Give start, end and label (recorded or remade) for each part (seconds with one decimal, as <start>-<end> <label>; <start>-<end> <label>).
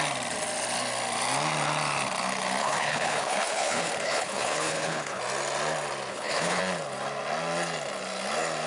0.0-2.6 recorded; 2.6-5.2 remade; 5.2-6.1 recorded; 6.1-6.6 remade; 6.6-8.7 recorded